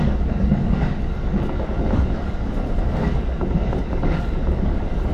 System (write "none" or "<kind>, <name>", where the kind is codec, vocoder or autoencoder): codec, DAC